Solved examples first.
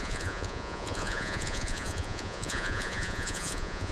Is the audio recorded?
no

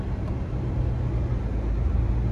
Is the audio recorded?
yes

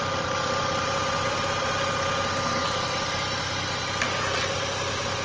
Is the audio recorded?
no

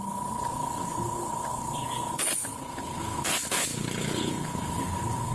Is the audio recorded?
no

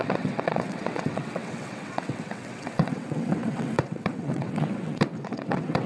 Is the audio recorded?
no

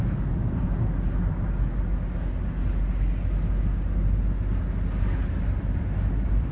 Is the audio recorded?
yes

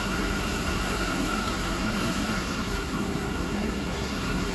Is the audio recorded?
no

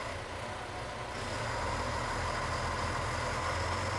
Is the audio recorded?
yes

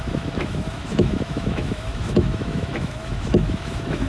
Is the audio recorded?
no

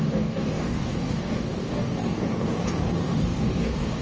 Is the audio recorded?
no